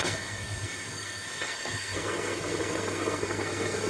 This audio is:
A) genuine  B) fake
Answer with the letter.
B